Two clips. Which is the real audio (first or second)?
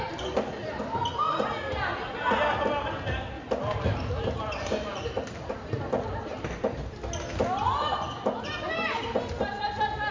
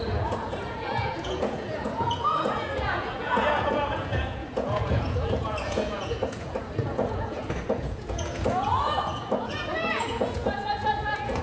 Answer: first